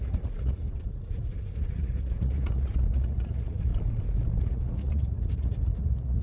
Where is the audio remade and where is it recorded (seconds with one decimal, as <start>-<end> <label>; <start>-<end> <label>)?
0.0-3.7 remade; 3.7-4.4 recorded; 4.4-6.2 remade